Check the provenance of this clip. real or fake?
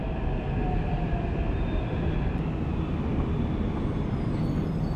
real